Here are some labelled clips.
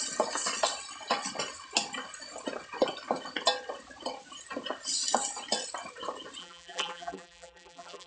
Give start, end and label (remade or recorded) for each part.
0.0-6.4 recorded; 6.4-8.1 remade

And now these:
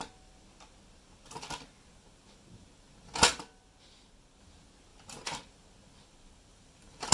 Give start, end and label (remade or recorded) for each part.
0.0-4.9 recorded; 4.9-5.4 remade; 5.4-6.5 recorded; 6.5-7.1 remade

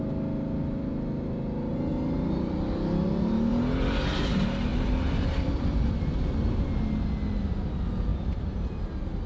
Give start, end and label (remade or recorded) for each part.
0.0-1.9 recorded; 1.9-3.6 remade; 3.6-4.7 recorded; 4.7-6.0 remade; 6.0-9.3 recorded